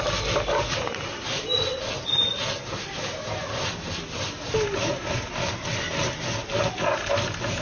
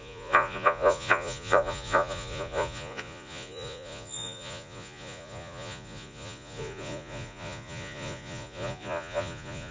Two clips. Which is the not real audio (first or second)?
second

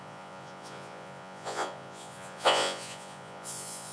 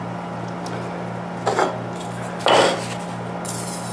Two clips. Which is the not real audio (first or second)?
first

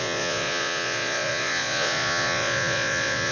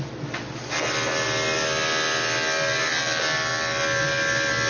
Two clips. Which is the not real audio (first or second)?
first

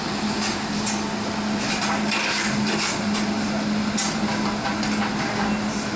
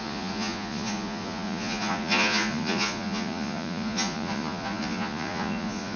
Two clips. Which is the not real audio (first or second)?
second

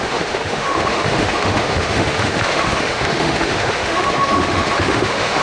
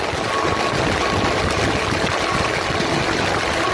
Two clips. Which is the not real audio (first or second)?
first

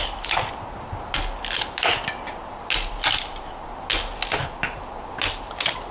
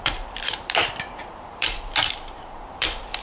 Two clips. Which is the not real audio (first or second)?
second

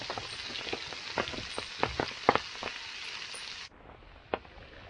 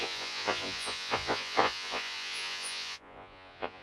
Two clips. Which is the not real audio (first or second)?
second